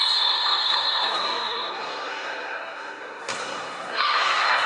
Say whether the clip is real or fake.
fake